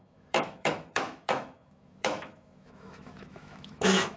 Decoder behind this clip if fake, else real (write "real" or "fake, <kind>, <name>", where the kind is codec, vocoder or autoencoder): fake, autoencoder, DAC-VAE